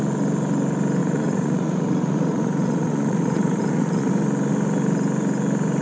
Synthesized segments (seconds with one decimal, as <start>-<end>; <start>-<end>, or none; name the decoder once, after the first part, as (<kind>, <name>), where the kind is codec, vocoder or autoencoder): 1.0-4.1 (vocoder, Vocos)